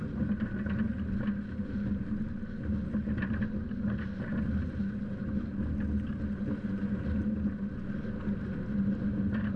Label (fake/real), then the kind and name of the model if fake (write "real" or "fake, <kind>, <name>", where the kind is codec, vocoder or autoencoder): real